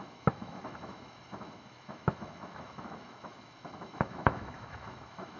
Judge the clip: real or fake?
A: fake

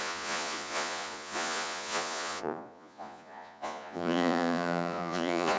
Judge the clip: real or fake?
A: fake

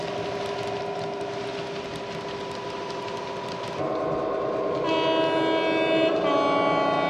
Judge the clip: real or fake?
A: real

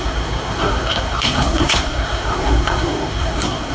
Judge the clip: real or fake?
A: fake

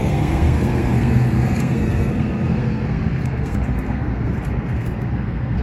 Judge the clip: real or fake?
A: fake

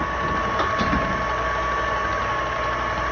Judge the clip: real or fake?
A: real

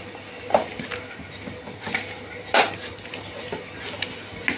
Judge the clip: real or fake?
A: real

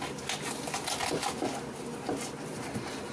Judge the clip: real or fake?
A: real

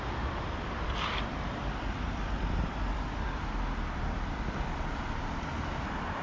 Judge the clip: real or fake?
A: fake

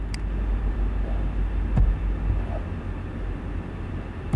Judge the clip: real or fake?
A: real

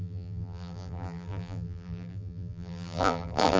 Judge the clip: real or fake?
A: fake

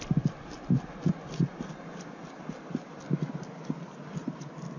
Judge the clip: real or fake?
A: real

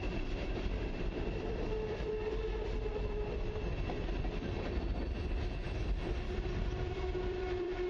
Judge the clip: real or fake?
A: fake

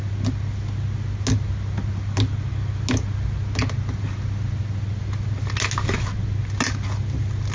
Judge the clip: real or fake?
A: real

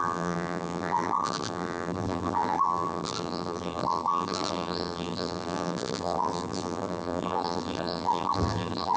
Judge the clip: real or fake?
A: fake